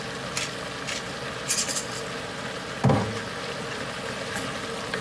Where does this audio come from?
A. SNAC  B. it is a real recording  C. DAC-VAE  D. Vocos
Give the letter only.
B